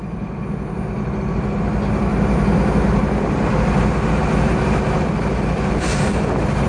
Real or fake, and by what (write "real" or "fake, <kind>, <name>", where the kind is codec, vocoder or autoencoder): real